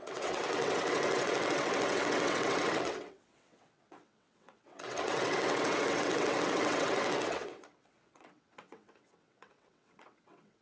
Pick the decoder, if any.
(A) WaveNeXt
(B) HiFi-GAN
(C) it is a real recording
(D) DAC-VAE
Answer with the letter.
A